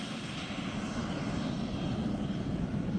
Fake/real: real